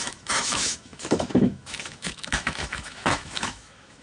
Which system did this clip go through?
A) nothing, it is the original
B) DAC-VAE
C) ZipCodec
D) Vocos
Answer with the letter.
B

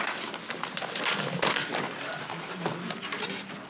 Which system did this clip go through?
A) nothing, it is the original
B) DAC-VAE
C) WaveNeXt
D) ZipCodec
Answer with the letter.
A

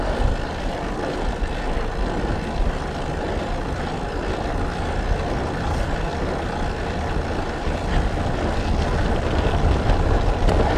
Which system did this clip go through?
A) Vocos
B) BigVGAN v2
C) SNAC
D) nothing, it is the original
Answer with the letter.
D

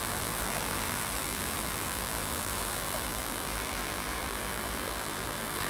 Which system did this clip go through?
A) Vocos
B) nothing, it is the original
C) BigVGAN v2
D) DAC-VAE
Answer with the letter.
C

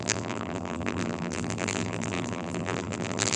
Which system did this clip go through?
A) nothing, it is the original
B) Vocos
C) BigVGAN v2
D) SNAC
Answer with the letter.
C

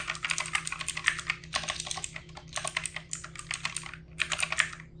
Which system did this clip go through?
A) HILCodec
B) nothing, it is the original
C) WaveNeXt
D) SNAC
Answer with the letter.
B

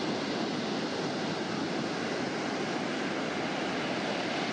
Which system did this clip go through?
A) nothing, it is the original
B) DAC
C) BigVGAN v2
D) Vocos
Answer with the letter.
A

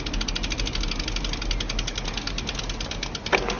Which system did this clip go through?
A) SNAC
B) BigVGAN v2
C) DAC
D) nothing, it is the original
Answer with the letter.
D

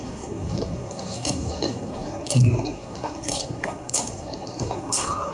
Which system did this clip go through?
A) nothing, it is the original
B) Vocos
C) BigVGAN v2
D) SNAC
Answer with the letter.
D